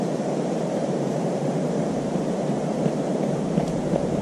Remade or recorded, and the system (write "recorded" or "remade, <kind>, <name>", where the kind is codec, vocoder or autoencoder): remade, vocoder, BigVGAN v2